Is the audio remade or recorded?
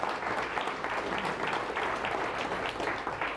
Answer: recorded